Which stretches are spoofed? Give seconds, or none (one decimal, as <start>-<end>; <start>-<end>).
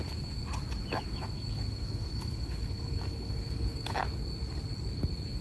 0.8-4.0